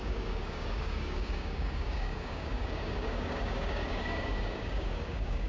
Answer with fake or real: fake